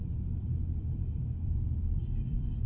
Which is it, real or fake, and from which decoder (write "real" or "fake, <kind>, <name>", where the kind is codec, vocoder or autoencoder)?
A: fake, vocoder, BigVGAN v2